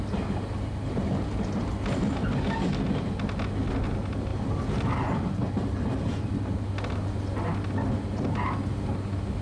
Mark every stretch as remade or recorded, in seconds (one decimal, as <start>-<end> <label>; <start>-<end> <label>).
0.0-4.3 recorded; 4.3-5.2 remade; 5.2-9.4 recorded